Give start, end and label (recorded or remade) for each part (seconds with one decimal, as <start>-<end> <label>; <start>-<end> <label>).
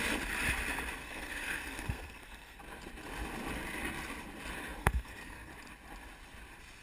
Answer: 0.0-1.0 recorded; 1.0-2.6 remade; 2.6-4.8 recorded; 4.8-5.5 remade; 5.5-6.8 recorded